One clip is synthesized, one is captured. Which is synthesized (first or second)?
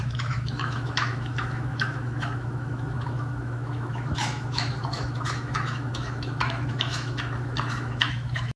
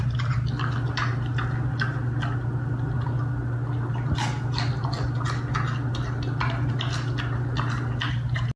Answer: first